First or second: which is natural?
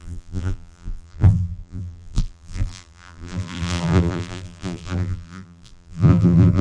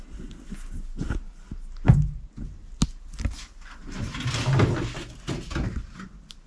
second